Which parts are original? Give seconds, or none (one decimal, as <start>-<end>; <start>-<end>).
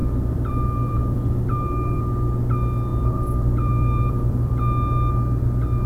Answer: 2.0-2.9; 4.5-5.9